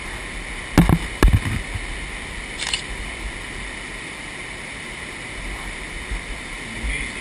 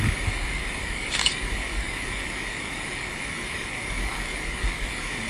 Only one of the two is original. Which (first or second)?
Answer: first